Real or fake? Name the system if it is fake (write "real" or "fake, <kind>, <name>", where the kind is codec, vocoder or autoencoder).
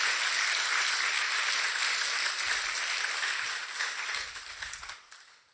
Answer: real